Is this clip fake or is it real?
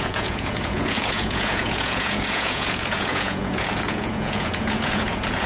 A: fake